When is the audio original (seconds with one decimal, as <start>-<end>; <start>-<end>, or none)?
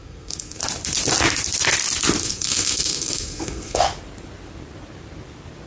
0.6-2.2; 3.8-5.7